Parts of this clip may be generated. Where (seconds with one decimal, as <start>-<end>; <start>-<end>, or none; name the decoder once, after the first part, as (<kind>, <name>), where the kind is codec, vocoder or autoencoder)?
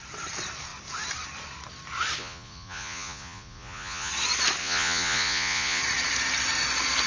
2.2-4.1 (vocoder, Vocos); 4.6-5.8